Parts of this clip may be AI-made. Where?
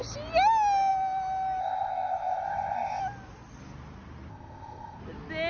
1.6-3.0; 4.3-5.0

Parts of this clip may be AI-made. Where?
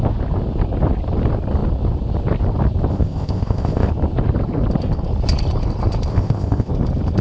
2.9-3.9; 6.1-6.7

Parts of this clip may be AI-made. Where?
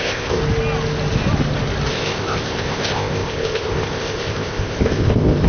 0.0-0.4; 1.9-5.5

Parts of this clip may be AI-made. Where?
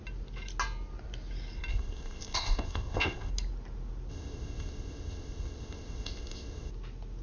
1.7-3.3; 4.1-6.7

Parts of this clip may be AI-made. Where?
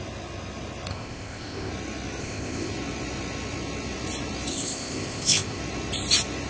0.9-1.7; 2.2-2.7; 4.5-5.6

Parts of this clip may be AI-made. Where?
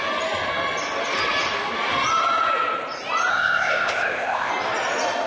3.3-4.5